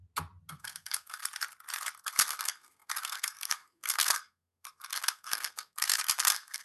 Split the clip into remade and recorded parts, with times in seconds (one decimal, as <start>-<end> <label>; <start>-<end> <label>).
0.0-0.5 recorded; 0.5-1.2 remade; 1.2-2.0 recorded; 2.0-6.6 remade